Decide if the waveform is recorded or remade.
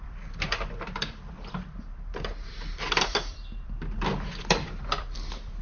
remade